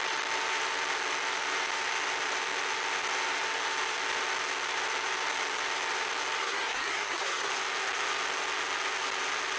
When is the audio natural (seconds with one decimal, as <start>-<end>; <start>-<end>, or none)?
0.0-6.4; 7.5-9.6